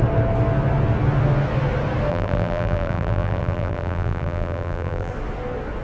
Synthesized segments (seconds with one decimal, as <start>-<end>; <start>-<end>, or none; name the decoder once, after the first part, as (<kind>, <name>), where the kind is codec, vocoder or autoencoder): 2.1-5.1 (vocoder, BigVGAN v2)